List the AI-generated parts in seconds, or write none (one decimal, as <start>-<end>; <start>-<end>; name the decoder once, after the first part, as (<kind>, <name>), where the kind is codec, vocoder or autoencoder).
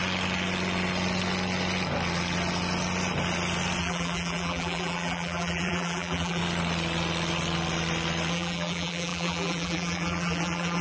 3.8-6.4 (vocoder, BigVGAN v2); 8.3-10.8